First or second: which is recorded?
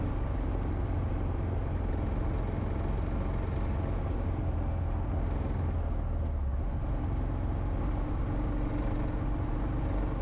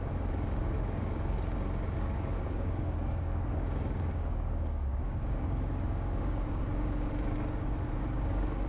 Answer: first